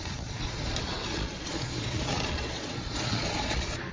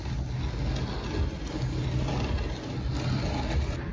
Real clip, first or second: second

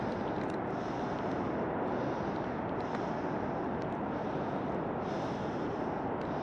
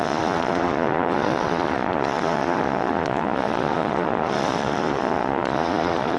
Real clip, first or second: first